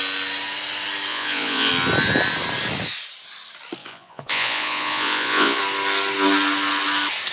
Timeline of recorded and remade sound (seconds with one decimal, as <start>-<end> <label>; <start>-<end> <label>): 0.0-1.1 recorded; 1.1-1.7 remade; 1.7-3.8 recorded; 3.8-5.6 remade; 5.6-7.3 recorded